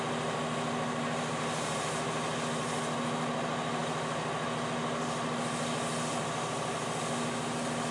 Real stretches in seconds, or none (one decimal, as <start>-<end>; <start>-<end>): 0.0-7.9